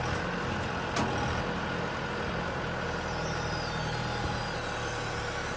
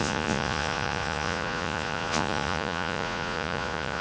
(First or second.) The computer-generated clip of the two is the second